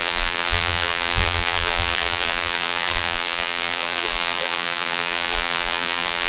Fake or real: fake